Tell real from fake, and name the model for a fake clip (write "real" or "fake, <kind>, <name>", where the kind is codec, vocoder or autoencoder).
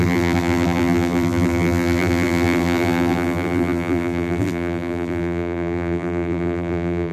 fake, vocoder, BigVGAN v2